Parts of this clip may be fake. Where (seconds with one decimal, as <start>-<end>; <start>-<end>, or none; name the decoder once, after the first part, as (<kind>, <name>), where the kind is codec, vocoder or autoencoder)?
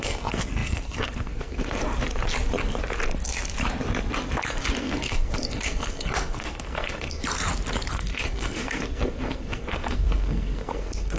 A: 0.0-1.8 (codec, SNAC); 4.8-7.2; 7.9-11.2